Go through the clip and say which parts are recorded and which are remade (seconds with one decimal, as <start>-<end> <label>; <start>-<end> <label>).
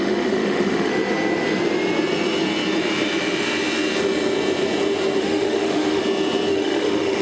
0.0-0.9 remade; 0.9-5.2 recorded; 5.2-6.0 remade; 6.0-6.5 recorded; 6.5-7.2 remade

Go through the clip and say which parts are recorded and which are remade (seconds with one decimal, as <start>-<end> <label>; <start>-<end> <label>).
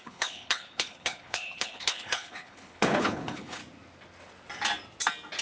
0.0-3.6 remade; 3.6-5.4 recorded